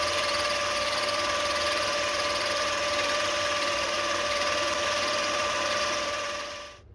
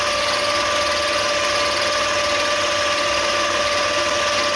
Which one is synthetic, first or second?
first